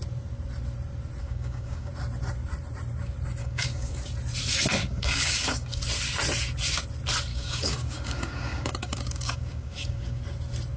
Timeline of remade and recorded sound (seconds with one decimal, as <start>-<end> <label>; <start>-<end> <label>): 0.0-1.2 recorded; 1.2-1.9 remade; 1.9-3.4 recorded; 3.4-4.0 remade; 4.0-4.8 recorded; 4.8-5.8 remade; 5.8-7.3 recorded; 7.3-10.2 remade; 10.2-10.8 recorded